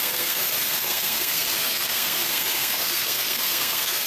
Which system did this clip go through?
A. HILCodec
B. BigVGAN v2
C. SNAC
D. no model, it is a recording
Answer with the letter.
C